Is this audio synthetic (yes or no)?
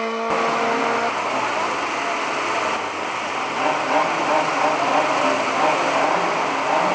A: no